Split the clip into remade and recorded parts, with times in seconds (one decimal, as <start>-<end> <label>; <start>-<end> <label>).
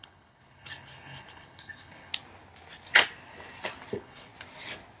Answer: 0.0-2.1 remade; 2.1-3.9 recorded; 3.9-4.3 remade; 4.3-5.0 recorded